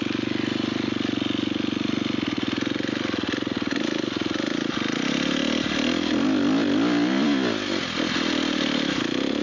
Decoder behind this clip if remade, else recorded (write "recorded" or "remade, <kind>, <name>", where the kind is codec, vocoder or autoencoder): recorded